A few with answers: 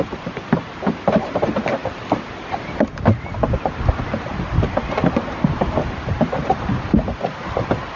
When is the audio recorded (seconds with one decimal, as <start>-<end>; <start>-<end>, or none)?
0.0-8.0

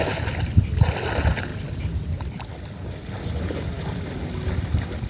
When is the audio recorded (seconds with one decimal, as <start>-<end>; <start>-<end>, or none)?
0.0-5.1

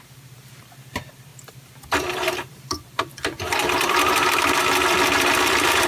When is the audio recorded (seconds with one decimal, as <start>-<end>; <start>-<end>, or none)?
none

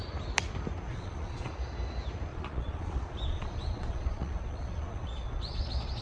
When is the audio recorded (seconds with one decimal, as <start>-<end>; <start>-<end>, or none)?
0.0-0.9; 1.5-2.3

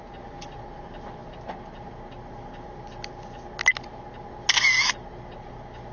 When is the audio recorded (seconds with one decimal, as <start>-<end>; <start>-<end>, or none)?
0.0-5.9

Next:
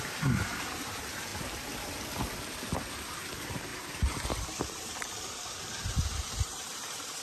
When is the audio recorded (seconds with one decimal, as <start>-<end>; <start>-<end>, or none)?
1.3-2.9

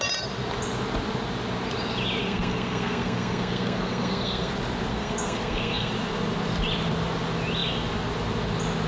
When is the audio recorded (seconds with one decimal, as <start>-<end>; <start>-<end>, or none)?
0.0-2.2; 4.5-4.9; 5.9-8.9

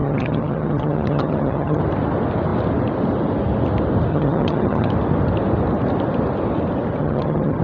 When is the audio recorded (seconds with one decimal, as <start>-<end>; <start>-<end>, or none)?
1.8-4.1; 4.9-7.0